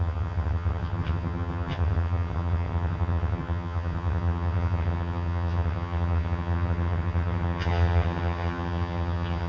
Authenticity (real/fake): fake